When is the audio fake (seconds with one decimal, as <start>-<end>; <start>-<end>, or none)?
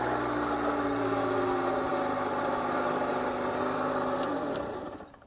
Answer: none